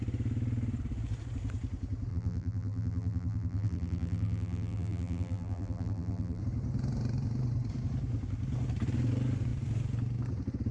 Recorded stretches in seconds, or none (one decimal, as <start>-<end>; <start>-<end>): 0.0-2.1; 6.4-10.7